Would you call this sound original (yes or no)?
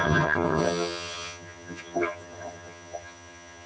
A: no